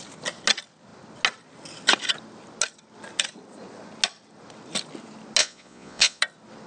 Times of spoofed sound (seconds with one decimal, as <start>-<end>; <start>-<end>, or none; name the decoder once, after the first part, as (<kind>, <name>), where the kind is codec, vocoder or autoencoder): 5.4-6.2 (vocoder, Vocos)